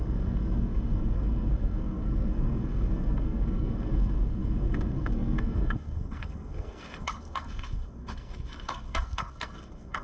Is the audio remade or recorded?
remade